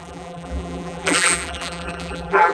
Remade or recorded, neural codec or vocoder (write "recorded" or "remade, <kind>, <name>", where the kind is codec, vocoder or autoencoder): remade, vocoder, BigVGAN v2